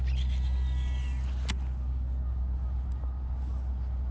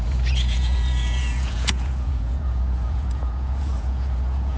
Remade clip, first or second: second